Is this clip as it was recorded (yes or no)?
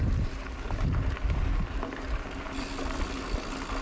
yes